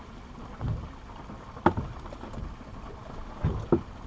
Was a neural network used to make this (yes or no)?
no